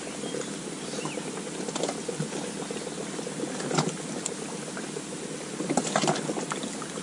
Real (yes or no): yes